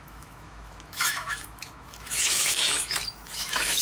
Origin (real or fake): fake